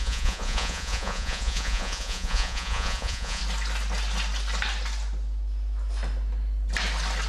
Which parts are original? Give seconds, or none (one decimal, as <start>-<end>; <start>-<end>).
3.4-7.3